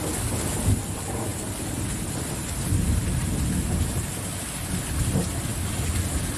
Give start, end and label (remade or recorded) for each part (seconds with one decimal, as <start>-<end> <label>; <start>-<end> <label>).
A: 0.0-6.4 recorded